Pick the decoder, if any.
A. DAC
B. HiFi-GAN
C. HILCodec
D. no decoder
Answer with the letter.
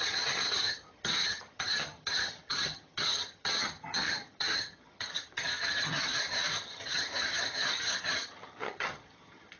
B